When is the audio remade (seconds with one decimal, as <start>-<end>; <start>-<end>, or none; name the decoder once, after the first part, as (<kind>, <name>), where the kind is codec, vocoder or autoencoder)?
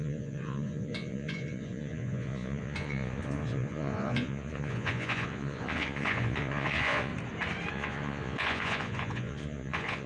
0.0-7.1 (vocoder, Vocos); 7.7-10.1